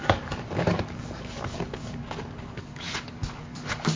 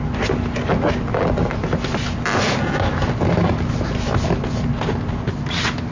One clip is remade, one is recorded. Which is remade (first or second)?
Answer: first